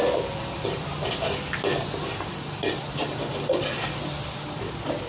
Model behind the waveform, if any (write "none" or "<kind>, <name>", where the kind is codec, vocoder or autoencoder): none